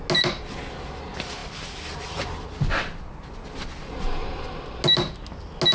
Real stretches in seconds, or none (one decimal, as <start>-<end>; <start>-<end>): 0.0-5.7

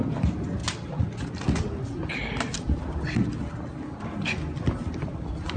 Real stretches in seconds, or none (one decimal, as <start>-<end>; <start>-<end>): 0.0-5.6

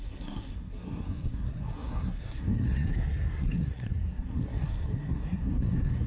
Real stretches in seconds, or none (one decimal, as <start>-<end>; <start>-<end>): none

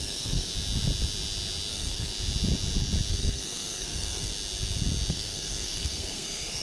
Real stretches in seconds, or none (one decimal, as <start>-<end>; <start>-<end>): 0.5-1.7; 2.1-3.1; 4.3-5.1